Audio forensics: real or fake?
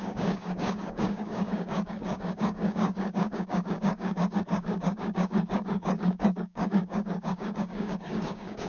fake